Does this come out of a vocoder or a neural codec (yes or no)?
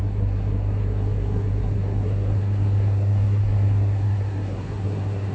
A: yes